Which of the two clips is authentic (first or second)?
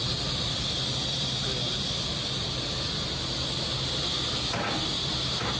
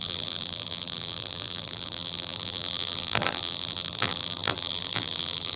first